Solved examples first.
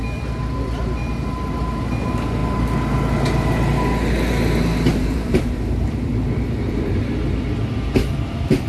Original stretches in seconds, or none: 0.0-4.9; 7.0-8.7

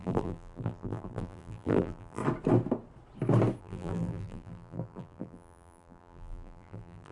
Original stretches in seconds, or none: 2.2-3.6